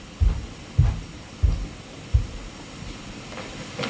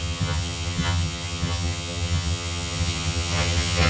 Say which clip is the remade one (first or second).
second